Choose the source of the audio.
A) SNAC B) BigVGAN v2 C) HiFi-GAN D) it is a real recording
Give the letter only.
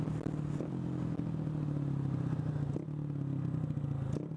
D